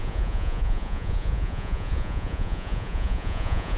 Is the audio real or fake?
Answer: fake